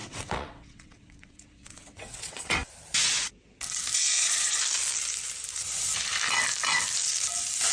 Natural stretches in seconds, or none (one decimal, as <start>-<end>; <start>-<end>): 2.7-7.7